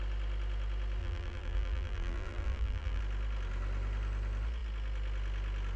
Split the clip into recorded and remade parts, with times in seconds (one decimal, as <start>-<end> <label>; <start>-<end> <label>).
0.0-1.0 recorded; 1.0-3.0 remade; 3.0-5.8 recorded